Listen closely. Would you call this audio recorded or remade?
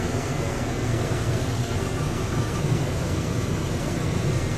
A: remade